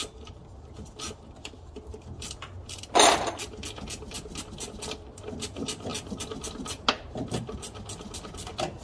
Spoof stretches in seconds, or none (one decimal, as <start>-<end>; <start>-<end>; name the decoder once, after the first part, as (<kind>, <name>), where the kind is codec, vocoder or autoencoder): 0.4-3.3 (vocoder, BigVGAN v2)